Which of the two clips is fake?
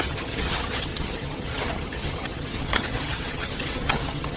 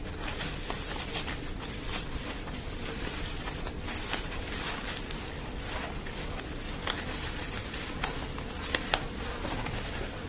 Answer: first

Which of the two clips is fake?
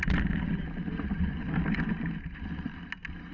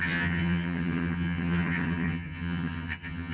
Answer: second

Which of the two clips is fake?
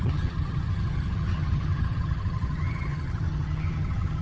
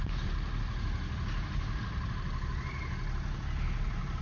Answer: first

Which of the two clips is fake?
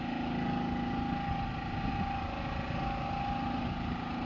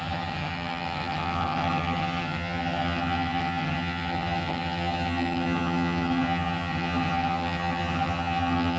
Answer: second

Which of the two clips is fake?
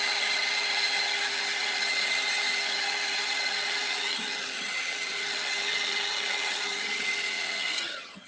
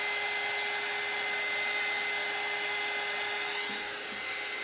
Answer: first